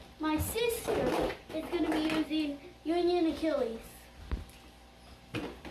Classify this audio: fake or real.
real